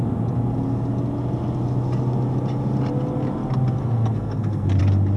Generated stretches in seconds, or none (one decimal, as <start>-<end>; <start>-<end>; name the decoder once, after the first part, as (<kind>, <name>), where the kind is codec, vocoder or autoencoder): 3.8-4.8 (codec, SNAC)